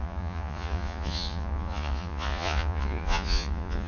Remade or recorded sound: remade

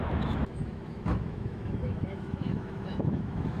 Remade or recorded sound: remade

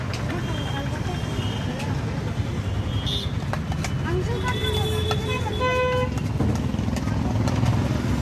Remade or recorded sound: recorded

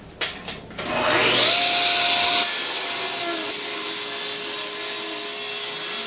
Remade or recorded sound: recorded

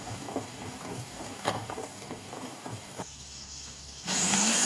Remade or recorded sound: remade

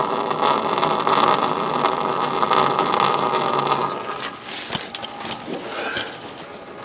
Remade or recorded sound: recorded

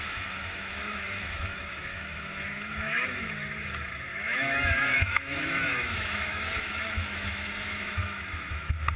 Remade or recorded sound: remade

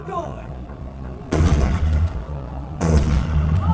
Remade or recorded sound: remade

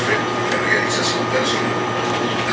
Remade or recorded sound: recorded